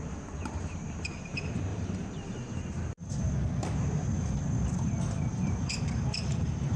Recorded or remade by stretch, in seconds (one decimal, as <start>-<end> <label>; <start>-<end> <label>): 0.0-1.7 recorded; 1.7-2.8 remade; 2.8-5.3 recorded; 5.3-5.8 remade; 5.8-6.8 recorded

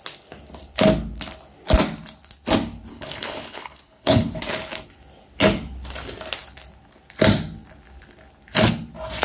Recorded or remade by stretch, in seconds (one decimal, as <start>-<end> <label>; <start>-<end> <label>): 0.0-2.9 recorded; 2.9-4.4 remade; 4.4-9.2 recorded

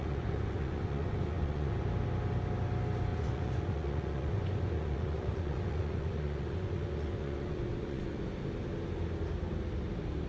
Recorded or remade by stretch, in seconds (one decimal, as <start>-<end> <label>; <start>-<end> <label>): 0.0-1.8 remade; 1.8-3.1 recorded; 3.1-8.2 remade; 8.2-10.3 recorded

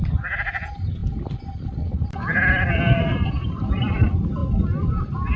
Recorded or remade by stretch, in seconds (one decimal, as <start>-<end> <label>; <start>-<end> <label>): 0.0-1.0 remade; 1.0-2.5 recorded; 2.5-4.4 remade; 4.4-4.9 recorded; 4.9-5.4 remade

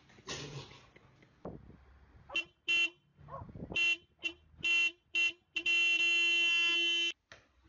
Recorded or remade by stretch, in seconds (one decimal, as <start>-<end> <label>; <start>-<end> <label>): 0.0-7.7 recorded